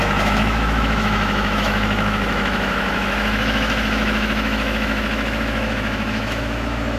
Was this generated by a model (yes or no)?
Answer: yes